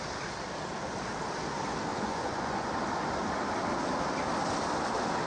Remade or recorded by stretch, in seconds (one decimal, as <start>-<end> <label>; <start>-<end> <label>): 0.0-1.9 recorded; 1.9-2.7 remade; 2.7-5.3 recorded